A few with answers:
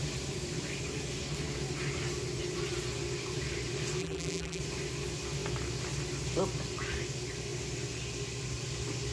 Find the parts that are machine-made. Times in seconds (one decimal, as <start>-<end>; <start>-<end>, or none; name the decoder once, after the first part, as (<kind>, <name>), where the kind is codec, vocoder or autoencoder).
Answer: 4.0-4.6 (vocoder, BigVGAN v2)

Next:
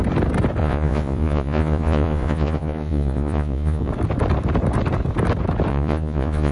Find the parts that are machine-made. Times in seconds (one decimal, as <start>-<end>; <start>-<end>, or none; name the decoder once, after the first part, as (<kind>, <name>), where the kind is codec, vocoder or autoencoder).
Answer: 0.6-3.9 (vocoder, Vocos); 5.7-6.5

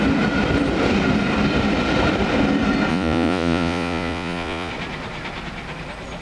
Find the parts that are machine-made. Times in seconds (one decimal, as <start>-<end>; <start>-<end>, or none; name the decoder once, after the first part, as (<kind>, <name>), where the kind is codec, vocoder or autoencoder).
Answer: 2.9-4.7 (vocoder, Vocos)

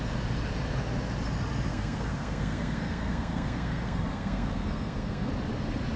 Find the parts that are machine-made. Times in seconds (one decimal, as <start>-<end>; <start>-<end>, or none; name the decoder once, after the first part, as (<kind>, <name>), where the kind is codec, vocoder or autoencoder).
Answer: 1.7-5.3 (codec, SNAC)

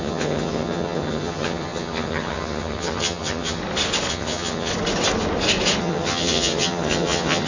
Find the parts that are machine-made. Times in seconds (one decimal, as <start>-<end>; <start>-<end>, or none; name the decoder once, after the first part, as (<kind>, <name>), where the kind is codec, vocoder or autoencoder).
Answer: 0.0-3.6 (vocoder, HiFi-GAN); 4.1-4.7; 5.8-7.5

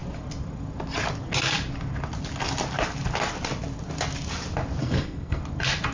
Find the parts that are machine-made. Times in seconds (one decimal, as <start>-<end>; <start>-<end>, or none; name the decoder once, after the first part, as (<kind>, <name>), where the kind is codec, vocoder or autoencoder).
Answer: 4.8-5.4 (codec, SNAC)

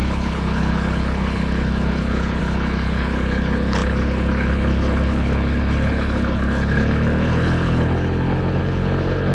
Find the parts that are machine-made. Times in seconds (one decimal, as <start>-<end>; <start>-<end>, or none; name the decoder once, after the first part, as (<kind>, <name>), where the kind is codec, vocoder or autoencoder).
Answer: 0.0-9.3 (codec, HILCodec)